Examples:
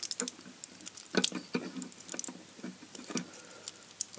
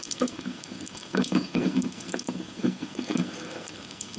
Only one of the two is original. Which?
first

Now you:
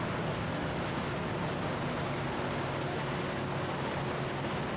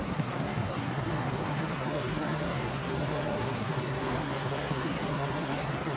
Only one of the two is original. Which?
first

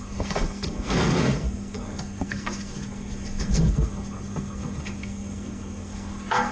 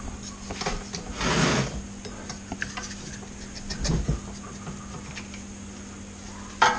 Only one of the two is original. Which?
second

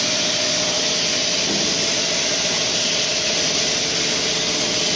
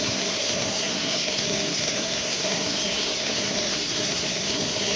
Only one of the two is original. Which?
first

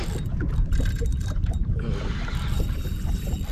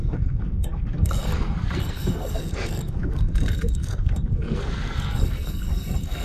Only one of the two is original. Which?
first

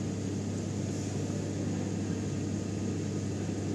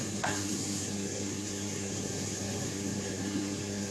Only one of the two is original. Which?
first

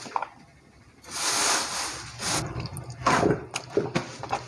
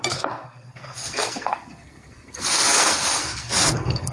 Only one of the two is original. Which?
first